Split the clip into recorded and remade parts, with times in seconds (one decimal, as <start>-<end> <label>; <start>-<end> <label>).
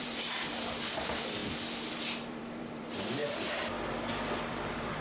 0.0-1.4 remade; 1.4-2.3 recorded; 2.3-3.2 remade; 3.2-4.5 recorded; 4.5-5.0 remade